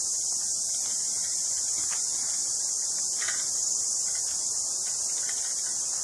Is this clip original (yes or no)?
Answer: yes